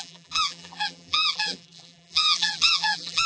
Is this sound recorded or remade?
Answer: remade